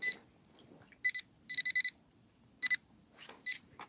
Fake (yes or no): no